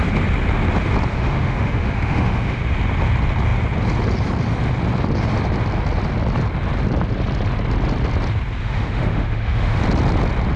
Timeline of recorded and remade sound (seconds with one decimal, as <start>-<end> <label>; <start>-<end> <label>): 0.0-1.1 recorded; 1.1-2.6 remade; 2.6-8.6 recorded; 8.6-9.8 remade; 9.8-10.6 recorded